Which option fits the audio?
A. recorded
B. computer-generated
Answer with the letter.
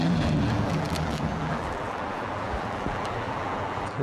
B